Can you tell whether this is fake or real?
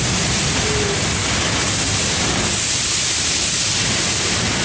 real